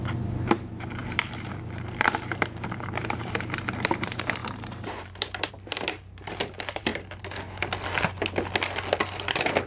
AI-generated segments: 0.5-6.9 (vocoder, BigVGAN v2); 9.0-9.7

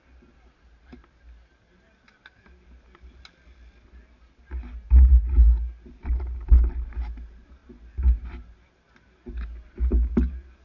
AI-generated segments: none

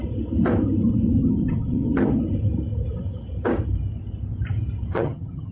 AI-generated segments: 1.2-2.2 (vocoder, HiFi-GAN); 4.9-5.5

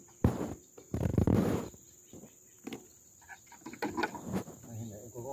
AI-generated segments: 1.1-2.2 (vocoder, BigVGAN v2)

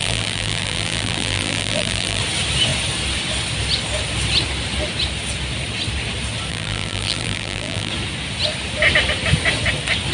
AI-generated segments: 0.0-2.2 (vocoder, BigVGAN v2); 6.5-7.9

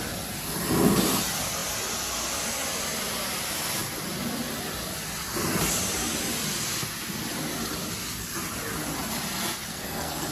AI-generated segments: 9.7-10.3 (codec, SNAC)

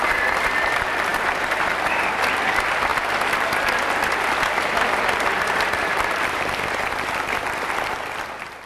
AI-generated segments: 0.0-2.9 (vocoder, BigVGAN v2); 4.0-8.7

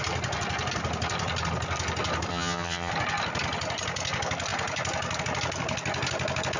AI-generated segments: 2.3-2.9 (vocoder, HiFi-GAN)